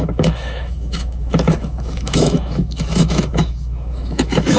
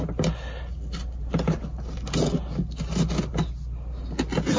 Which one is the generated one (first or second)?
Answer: first